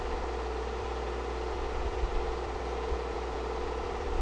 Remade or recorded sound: remade